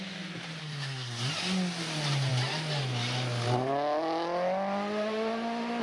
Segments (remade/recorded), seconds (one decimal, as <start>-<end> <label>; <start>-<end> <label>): 0.0-0.6 recorded; 0.6-1.3 remade; 1.3-5.8 recorded